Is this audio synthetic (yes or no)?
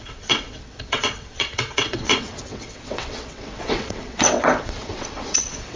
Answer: yes